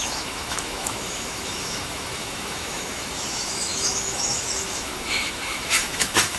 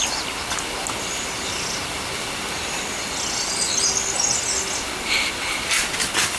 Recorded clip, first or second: second